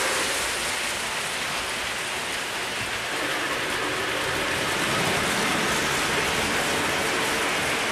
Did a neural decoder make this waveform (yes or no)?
no